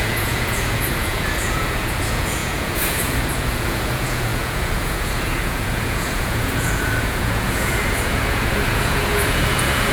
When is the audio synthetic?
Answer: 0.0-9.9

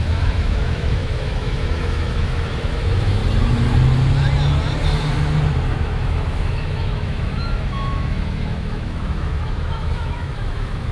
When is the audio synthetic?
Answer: 0.0-3.2; 5.7-10.9

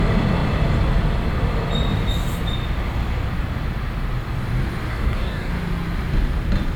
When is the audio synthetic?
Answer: 4.9-5.5

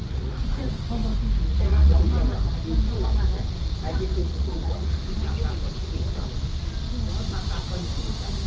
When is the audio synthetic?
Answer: 0.0-0.7; 1.5-2.2; 4.2-4.9

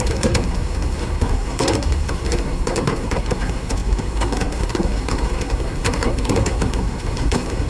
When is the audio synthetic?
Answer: 0.0-7.7

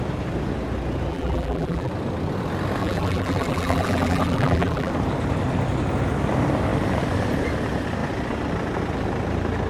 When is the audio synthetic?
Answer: 1.1-1.9; 2.8-4.9